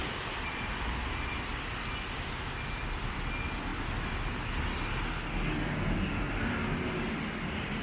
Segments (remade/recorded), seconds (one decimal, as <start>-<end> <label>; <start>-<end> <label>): 0.0-7.8 recorded